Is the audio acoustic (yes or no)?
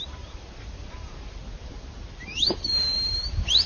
no